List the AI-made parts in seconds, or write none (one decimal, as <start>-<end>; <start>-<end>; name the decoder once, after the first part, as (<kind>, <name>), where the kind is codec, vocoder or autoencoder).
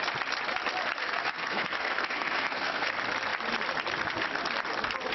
1.0-2.9 (codec, SNAC)